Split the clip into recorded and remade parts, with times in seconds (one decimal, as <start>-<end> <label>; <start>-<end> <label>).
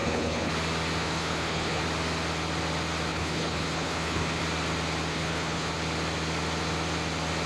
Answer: 0.0-0.5 remade; 0.5-1.0 recorded; 1.0-1.8 remade; 1.8-3.1 recorded; 3.1-4.4 remade; 4.4-5.1 recorded; 5.1-5.7 remade; 5.7-7.5 recorded